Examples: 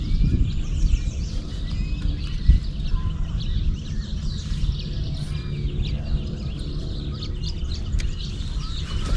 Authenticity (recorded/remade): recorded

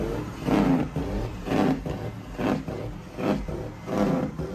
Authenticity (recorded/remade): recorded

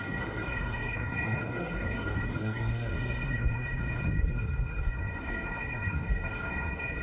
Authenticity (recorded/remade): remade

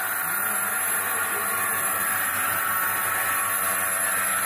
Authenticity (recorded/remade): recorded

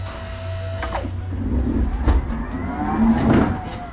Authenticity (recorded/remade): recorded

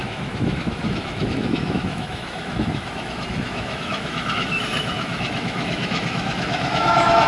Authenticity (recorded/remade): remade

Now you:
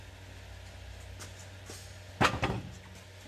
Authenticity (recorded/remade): recorded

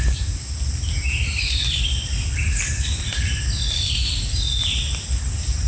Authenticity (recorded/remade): recorded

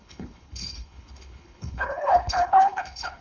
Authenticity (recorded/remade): remade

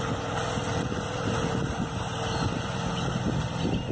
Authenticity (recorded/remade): recorded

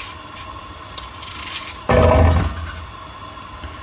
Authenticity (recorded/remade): recorded